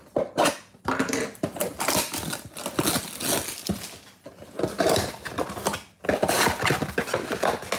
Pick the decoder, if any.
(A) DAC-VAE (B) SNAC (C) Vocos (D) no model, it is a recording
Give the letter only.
D